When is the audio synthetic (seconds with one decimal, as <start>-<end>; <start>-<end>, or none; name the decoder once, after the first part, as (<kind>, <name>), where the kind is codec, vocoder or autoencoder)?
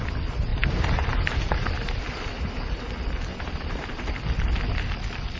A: 0.5-2.8 (vocoder, BigVGAN v2); 3.3-4.1